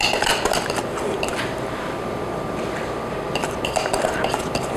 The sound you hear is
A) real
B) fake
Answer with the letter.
A